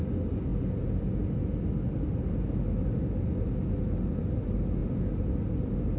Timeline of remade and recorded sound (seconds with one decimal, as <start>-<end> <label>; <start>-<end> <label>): 0.0-6.0 recorded